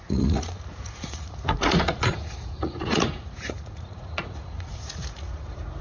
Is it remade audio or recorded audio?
remade